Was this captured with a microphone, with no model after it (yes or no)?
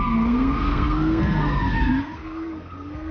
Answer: no